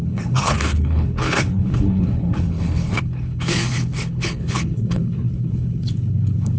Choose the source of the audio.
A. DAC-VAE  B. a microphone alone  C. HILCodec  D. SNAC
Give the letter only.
C